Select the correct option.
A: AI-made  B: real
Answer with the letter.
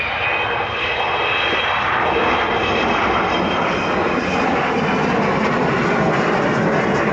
B